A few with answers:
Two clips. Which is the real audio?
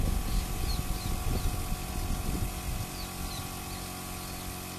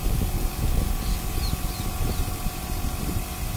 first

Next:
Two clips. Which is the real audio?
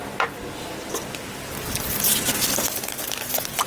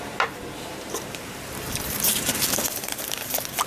first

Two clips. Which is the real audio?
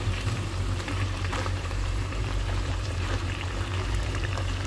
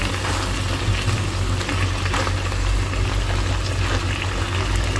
second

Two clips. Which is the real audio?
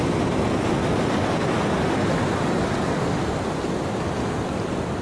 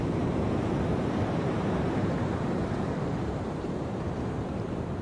first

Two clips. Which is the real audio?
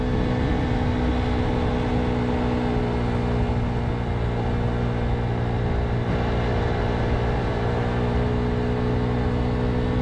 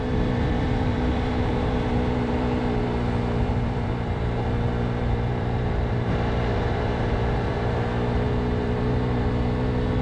first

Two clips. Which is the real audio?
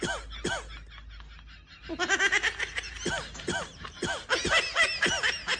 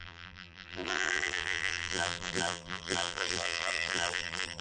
first